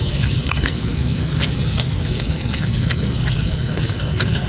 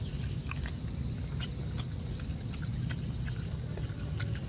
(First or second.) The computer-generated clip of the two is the first